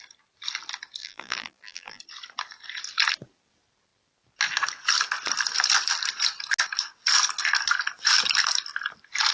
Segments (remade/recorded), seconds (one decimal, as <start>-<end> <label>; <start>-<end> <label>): 0.0-1.0 recorded; 1.0-2.0 remade; 2.0-9.3 recorded